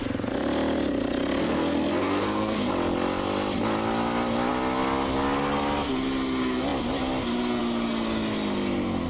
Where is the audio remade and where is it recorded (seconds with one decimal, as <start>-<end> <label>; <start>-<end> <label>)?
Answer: 0.0-1.4 recorded; 1.4-2.7 remade; 2.7-9.1 recorded